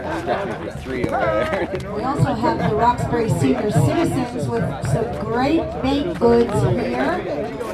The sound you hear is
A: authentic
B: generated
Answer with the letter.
A